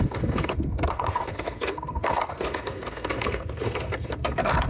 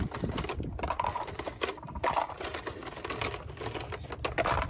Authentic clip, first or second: second